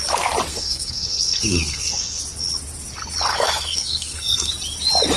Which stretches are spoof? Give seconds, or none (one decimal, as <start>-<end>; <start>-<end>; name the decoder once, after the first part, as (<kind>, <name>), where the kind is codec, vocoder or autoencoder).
0.5-2.2 (codec, SNAC); 3.3-4.5